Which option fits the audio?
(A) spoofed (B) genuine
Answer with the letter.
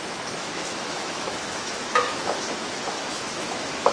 A